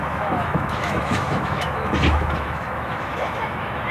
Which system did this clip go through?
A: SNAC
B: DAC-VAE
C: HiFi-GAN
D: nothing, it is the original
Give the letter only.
B